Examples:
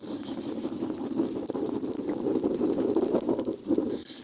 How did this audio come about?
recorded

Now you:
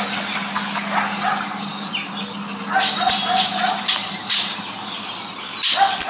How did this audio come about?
recorded